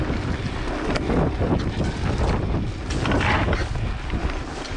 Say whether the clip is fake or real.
real